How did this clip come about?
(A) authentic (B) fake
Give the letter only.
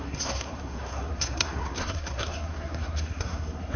B